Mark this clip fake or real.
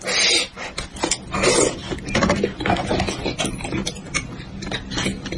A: real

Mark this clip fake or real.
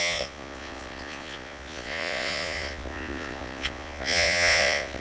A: fake